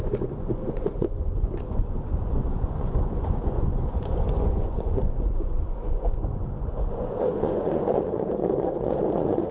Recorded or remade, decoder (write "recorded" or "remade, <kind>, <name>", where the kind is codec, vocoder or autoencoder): remade, vocoder, Vocos